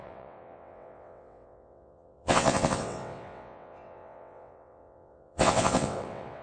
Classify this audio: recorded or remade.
remade